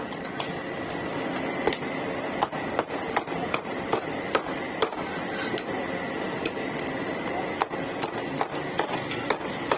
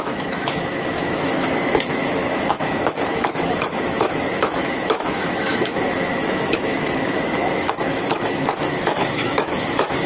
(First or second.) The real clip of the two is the first